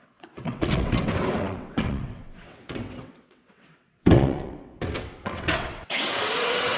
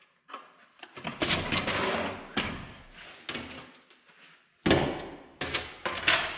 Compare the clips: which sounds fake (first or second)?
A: first